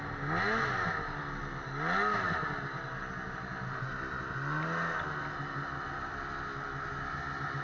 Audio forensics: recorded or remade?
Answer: recorded